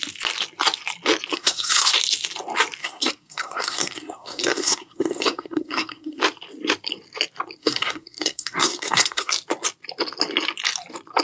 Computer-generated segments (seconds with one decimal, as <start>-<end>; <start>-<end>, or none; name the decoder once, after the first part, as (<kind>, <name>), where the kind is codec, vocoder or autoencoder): 1.3-1.9 (codec, SNAC); 2.8-6.2; 7.6-9.3